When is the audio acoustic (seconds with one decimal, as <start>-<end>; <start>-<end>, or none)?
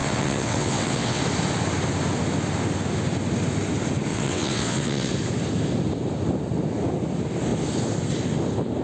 1.2-4.1; 5.1-8.8